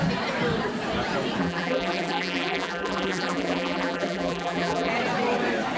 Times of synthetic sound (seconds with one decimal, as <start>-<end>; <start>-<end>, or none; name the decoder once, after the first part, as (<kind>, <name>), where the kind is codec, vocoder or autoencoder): 1.4-4.9 (vocoder, BigVGAN v2)